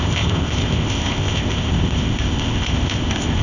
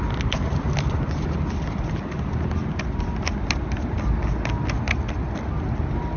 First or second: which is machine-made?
first